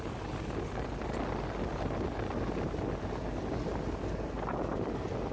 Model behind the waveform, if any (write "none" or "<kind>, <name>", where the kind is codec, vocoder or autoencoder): none